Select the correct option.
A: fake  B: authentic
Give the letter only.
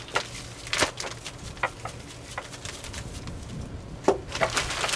B